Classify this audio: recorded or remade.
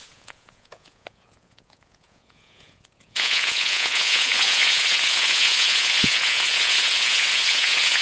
remade